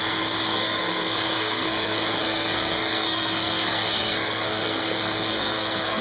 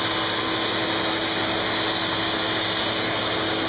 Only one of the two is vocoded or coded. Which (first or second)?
first